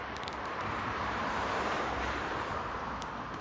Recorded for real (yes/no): no